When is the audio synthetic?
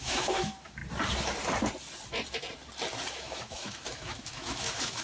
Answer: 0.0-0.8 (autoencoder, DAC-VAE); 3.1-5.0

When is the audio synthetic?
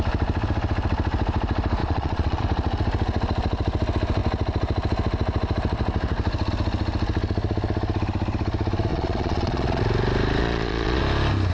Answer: 1.8-2.4 (vocoder, Vocos); 8.9-9.8; 10.4-11.0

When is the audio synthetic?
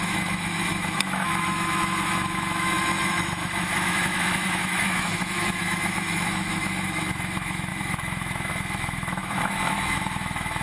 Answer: 0.0-10.6 (autoencoder, DAC-VAE)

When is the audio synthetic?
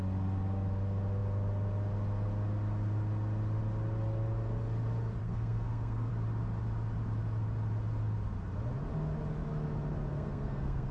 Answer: 5.2-6.1 (codec, SNAC); 10.1-10.9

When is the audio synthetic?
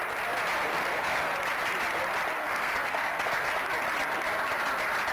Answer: 0.7-1.3 (codec, SNAC); 2.4-3.5